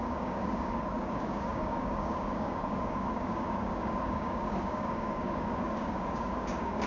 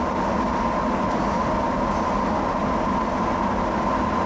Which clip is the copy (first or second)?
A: first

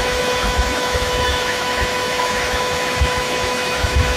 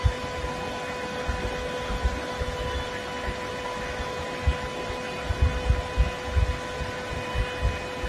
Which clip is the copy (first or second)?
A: first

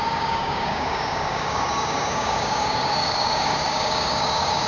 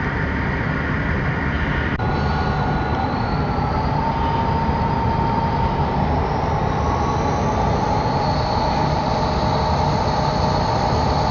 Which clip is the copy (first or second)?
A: first